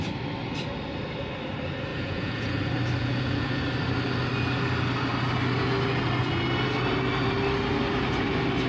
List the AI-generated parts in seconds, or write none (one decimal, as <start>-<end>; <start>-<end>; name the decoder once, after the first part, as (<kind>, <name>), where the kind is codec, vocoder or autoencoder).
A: 1.9-2.6 (vocoder, Vocos); 3.0-3.6